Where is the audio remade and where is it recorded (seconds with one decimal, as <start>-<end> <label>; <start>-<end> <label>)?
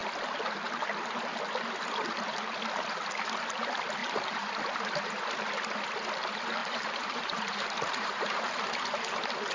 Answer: 0.0-4.0 recorded; 4.0-4.5 remade; 4.5-6.6 recorded; 6.6-8.5 remade; 8.5-9.5 recorded